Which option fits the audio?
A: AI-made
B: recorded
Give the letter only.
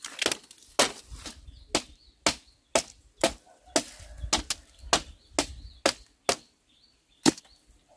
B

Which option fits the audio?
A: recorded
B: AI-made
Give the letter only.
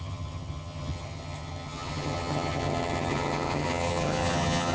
B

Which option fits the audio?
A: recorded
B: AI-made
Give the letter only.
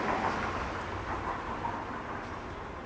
A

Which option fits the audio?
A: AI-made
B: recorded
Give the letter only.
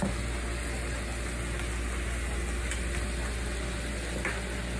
B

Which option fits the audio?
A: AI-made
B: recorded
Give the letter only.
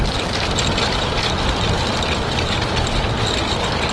B